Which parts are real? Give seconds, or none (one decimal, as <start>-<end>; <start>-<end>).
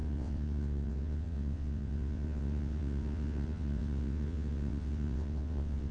none